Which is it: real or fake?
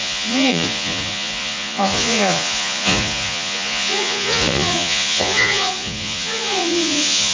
fake